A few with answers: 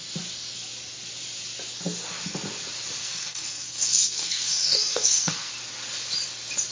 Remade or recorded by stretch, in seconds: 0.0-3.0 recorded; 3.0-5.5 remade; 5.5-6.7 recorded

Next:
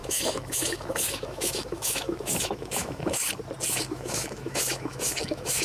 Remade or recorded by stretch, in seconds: 0.0-3.2 remade; 3.2-3.7 recorded; 3.7-5.6 remade

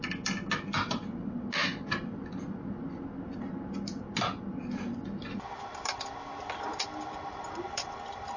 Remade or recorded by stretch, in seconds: 0.0-8.4 recorded